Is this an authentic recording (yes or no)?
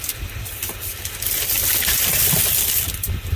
yes